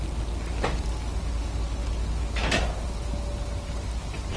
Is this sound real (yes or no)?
yes